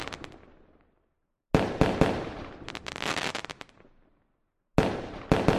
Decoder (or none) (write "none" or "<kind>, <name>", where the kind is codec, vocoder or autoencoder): none